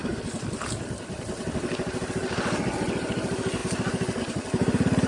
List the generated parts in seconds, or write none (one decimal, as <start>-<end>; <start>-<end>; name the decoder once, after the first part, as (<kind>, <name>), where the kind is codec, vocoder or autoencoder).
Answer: none

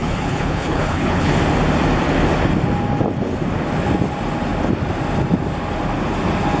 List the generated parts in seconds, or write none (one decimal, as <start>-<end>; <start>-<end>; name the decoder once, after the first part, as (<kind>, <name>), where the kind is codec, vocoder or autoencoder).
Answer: 0.0-1.3 (codec, HILCodec)

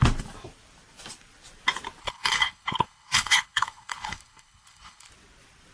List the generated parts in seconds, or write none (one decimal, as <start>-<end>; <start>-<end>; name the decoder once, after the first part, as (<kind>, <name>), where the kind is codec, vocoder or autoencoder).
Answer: 2.0-5.1 (codec, HILCodec)